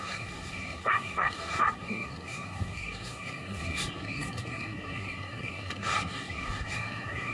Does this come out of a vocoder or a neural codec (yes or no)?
yes